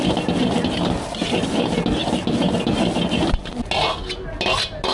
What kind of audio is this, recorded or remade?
recorded